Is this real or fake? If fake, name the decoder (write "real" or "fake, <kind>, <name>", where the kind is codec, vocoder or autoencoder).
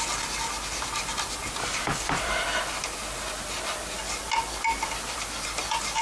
real